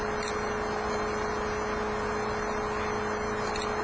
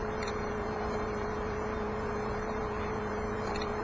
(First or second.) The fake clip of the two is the second